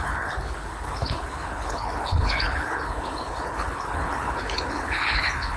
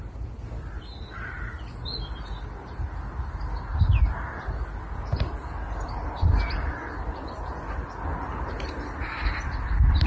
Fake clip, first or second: first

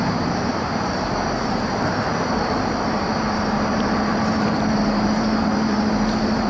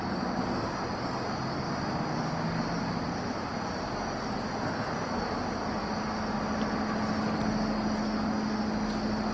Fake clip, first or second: first